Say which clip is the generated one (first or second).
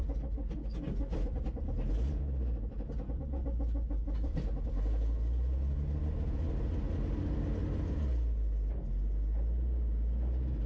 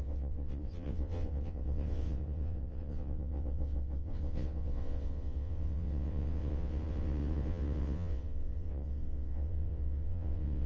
second